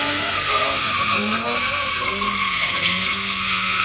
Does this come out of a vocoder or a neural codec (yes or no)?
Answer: yes